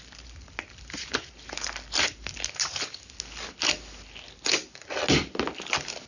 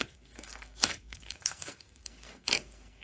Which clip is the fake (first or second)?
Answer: second